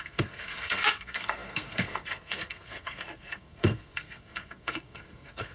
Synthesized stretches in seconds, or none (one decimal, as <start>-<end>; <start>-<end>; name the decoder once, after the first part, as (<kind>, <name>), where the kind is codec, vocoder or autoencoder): 0.0-5.5 (codec, SNAC)